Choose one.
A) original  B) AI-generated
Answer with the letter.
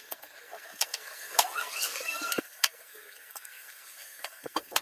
B